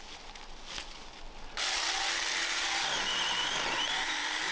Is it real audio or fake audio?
real